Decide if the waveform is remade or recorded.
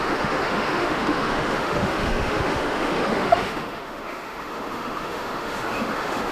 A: remade